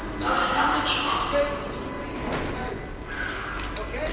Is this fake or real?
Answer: real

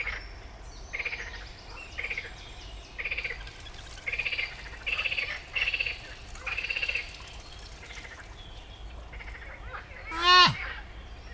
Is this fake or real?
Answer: real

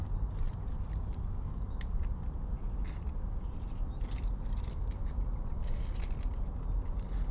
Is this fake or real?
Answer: real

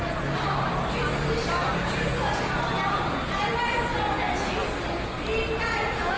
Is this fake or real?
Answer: real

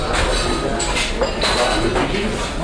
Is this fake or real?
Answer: real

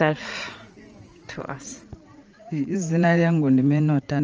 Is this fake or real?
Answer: fake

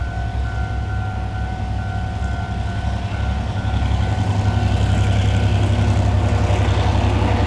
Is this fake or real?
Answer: real